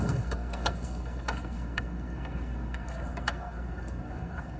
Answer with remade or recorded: remade